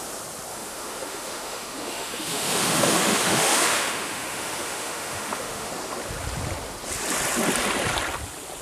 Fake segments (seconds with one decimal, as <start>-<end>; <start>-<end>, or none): 0.5-5.7